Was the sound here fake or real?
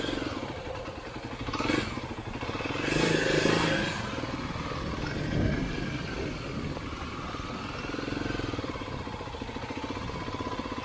real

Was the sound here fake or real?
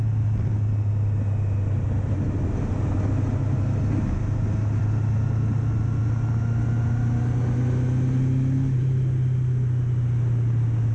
real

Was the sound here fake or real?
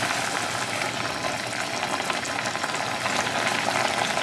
real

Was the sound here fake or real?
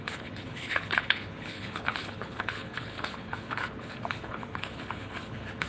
fake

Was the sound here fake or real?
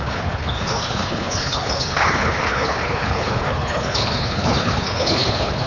fake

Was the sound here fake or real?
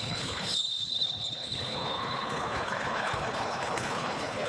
fake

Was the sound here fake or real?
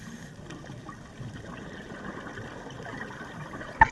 real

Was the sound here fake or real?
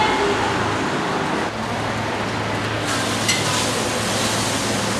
real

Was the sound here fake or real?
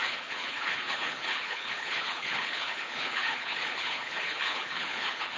fake